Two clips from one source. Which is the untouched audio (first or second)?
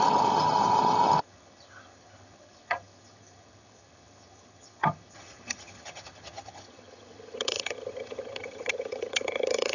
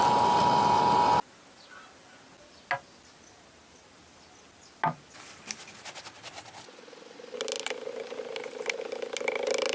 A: second